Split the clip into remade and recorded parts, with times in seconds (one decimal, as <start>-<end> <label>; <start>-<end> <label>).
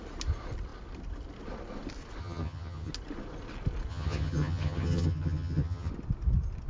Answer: 0.0-2.2 recorded; 2.2-2.9 remade; 2.9-3.9 recorded; 3.9-5.9 remade; 5.9-6.7 recorded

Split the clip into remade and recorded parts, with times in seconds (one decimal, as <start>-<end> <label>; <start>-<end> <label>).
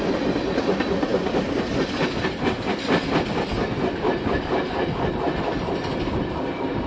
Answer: 0.0-6.9 recorded